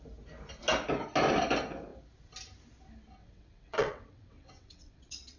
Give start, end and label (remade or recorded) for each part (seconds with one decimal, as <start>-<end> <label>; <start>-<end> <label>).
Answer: 0.0-3.2 recorded; 3.2-5.4 remade